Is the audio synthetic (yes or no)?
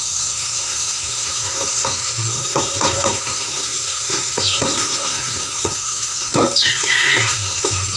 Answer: yes